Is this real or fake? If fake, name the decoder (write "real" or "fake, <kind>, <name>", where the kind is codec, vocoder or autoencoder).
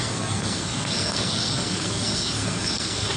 fake, codec, SNAC